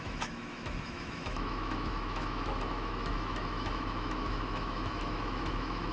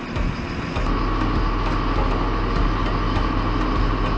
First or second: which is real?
second